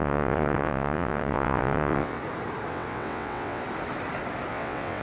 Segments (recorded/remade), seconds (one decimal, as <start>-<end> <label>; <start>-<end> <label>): 0.0-2.2 remade; 2.2-2.7 recorded; 2.7-3.6 remade; 3.6-4.5 recorded; 4.5-5.0 remade